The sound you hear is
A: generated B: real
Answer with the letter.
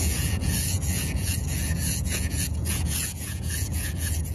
A